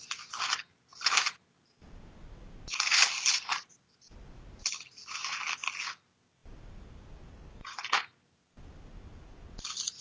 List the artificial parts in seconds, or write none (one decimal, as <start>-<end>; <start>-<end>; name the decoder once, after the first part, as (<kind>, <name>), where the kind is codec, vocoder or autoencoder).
none